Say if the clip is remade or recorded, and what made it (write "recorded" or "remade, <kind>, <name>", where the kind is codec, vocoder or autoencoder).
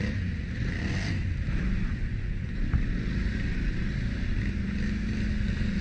recorded